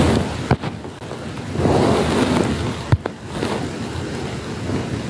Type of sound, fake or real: real